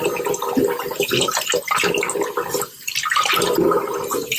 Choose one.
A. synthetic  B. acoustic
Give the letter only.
B